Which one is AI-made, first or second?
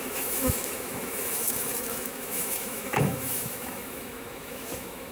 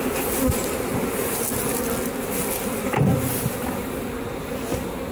first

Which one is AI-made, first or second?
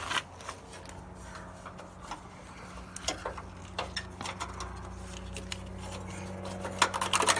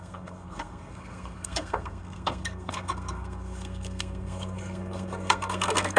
second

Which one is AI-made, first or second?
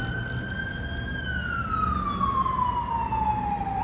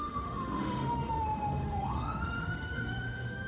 second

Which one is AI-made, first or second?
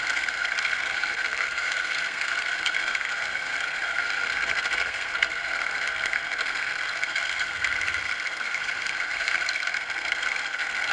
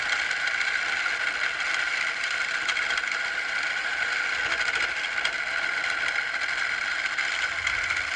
first